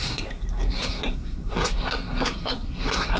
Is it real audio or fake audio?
fake